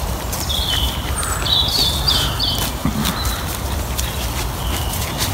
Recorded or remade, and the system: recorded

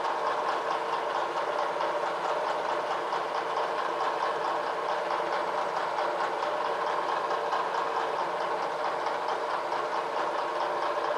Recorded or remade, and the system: recorded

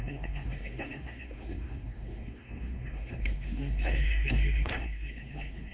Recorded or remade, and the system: remade, codec, SNAC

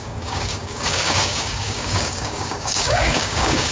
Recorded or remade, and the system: remade, codec, DAC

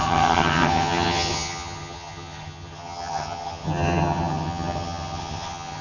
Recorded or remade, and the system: remade, vocoder, HiFi-GAN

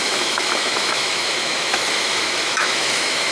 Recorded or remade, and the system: remade, autoencoder, DAC-VAE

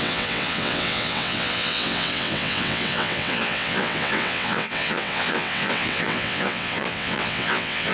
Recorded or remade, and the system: remade, vocoder, WaveNeXt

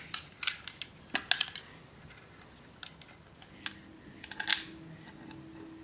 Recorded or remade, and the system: recorded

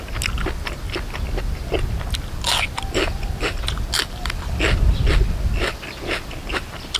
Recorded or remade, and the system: recorded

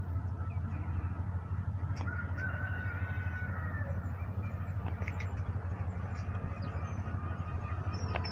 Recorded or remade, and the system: recorded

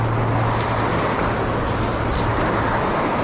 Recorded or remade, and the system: recorded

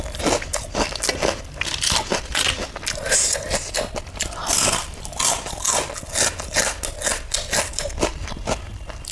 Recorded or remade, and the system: recorded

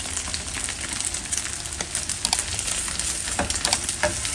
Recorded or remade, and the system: recorded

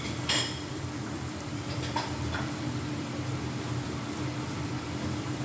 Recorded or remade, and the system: remade, vocoder, BigVGAN v2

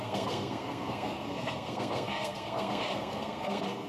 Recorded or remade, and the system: remade, codec, SNAC